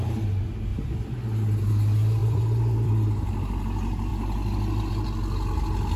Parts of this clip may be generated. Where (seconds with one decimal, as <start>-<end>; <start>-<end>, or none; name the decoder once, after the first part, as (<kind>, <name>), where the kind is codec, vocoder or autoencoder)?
2.2-2.9 (vocoder, BigVGAN v2)